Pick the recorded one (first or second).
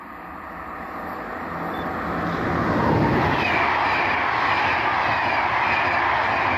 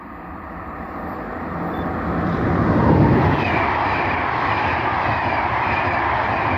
first